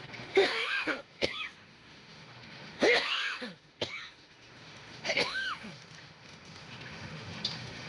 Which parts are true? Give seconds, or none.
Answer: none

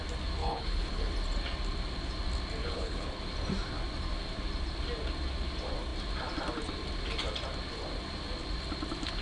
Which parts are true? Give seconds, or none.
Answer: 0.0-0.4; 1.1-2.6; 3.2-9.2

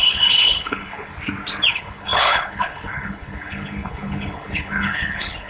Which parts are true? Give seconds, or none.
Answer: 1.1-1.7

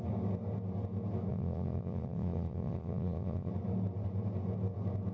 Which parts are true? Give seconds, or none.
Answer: 0.0-1.3; 3.5-5.1

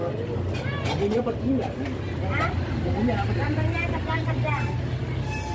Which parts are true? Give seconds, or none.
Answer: 0.0-5.5